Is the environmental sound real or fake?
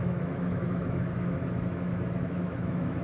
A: fake